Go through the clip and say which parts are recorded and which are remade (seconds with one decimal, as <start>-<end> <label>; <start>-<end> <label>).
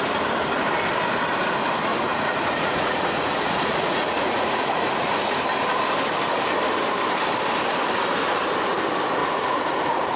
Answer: 0.0-1.9 recorded; 1.9-5.4 remade; 5.4-9.2 recorded; 9.2-10.2 remade